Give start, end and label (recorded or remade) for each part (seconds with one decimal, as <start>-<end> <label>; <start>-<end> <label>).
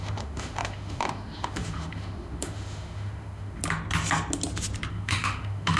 0.0-3.6 remade; 3.6-4.9 recorded; 4.9-5.8 remade